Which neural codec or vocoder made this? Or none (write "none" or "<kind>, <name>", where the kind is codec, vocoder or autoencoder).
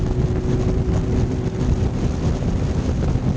none